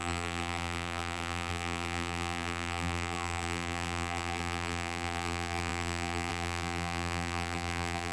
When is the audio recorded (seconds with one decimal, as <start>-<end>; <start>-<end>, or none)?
none